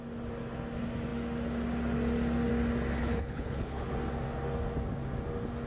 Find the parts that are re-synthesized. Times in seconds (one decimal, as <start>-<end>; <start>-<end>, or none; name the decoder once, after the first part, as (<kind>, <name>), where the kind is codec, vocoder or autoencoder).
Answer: 3.0-3.9 (codec, HILCodec)